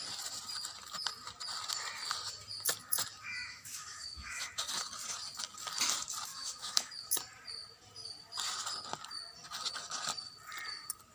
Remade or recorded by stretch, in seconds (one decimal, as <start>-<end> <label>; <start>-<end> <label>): 0.0-3.3 recorded; 3.3-4.5 remade; 4.5-6.3 recorded; 6.3-6.9 remade; 6.9-11.1 recorded